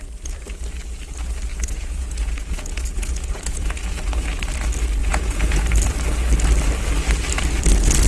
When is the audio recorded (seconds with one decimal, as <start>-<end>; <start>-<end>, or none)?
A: 0.0-1.5; 4.4-5.0; 5.6-8.1